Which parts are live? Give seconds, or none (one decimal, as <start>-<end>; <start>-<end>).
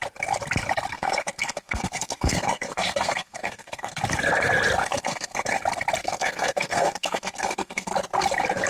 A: 0.0-0.9; 4.0-4.8; 5.6-6.0; 7.9-8.7